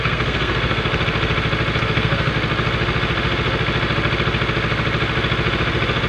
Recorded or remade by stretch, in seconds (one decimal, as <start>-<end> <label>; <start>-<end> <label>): 0.0-0.9 remade; 0.9-1.8 recorded; 1.8-2.3 remade; 2.3-6.1 recorded